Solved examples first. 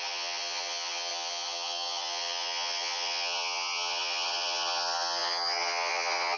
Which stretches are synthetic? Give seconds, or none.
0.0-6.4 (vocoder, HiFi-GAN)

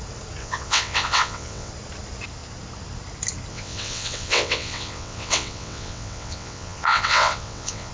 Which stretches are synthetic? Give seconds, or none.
0.4-1.7 (vocoder, WaveNeXt); 3.5-7.9

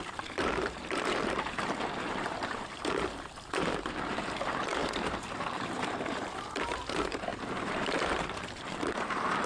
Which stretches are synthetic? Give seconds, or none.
0.0-9.5 (vocoder, BigVGAN v2)